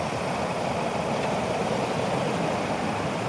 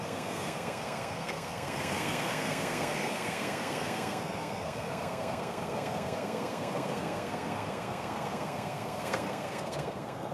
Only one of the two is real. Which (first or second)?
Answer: first